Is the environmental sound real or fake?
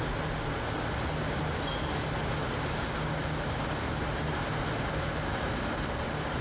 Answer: real